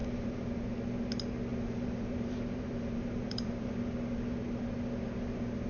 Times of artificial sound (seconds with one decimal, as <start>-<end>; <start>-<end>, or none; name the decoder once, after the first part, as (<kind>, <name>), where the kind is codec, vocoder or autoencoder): 0.0-0.6 (vocoder, BigVGAN v2); 1.5-3.7